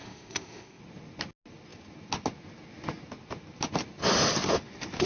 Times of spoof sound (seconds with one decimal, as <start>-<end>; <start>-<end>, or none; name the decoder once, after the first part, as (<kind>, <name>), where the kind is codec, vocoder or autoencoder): 0.0-0.8 (codec, ZipCodec)